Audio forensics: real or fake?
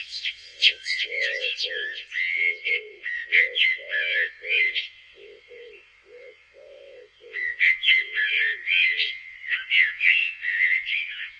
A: fake